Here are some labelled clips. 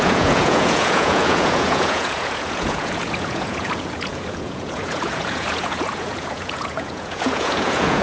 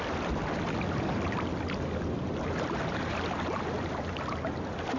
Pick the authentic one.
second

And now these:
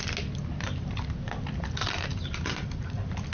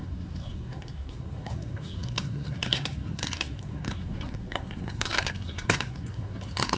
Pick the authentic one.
first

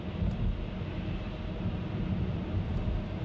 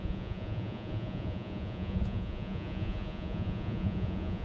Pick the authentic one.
first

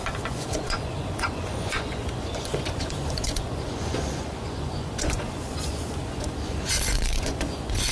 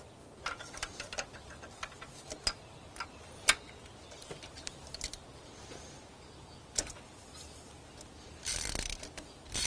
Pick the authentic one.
second